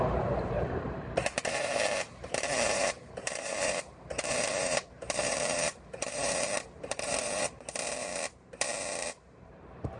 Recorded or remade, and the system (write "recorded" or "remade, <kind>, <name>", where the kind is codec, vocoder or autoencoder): remade, vocoder, BigVGAN v2